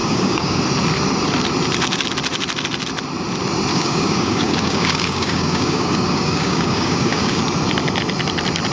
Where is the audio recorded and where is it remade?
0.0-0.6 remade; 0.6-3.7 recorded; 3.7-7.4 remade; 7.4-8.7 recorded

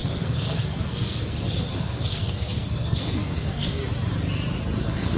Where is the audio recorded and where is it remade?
0.0-3.8 remade; 3.8-4.8 recorded; 4.8-5.2 remade

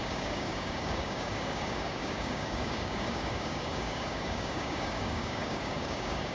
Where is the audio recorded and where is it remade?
0.0-6.3 remade

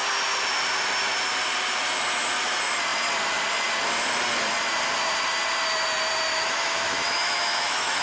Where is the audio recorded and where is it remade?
0.0-6.3 recorded; 6.3-8.0 remade

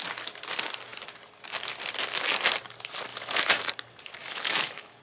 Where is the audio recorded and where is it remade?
0.0-3.1 recorded; 3.1-3.7 remade; 3.7-4.2 recorded; 4.2-5.0 remade